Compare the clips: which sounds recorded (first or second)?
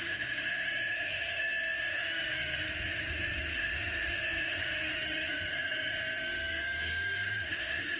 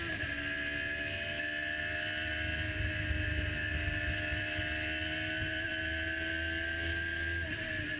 second